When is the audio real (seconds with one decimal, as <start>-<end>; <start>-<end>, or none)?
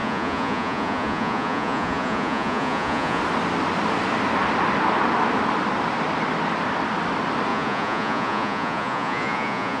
3.2-7.5